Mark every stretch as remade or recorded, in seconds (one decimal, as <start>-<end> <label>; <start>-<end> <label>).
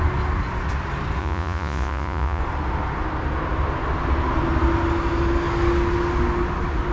0.0-1.2 recorded; 1.2-2.4 remade; 2.4-6.9 recorded